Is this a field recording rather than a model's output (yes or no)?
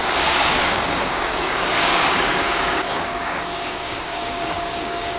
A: no